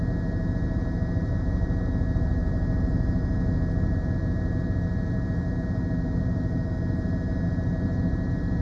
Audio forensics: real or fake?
real